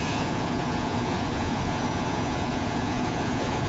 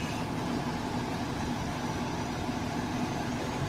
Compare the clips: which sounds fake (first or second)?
first